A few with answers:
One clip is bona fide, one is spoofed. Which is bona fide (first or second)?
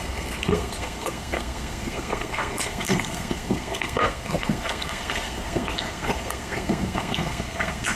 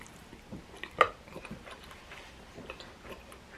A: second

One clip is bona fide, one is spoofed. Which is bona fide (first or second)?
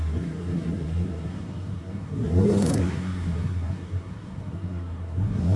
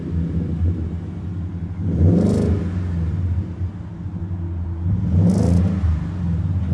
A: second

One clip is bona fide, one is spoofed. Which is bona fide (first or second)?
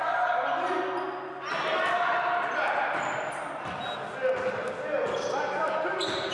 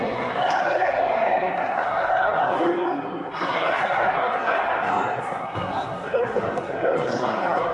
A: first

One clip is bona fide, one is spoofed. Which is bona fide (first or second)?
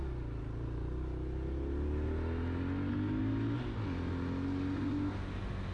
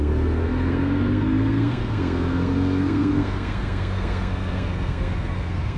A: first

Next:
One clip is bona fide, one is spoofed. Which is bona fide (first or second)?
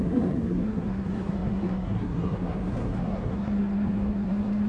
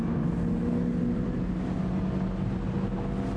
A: second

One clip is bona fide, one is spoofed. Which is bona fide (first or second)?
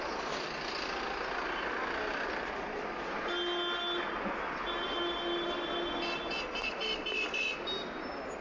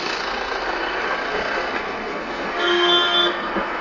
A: first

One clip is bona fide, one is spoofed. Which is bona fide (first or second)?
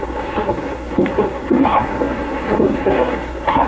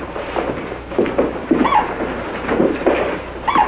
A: second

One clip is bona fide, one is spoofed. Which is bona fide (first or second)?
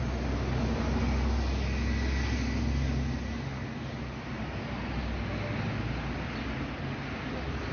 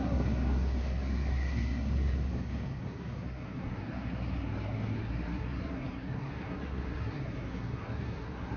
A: first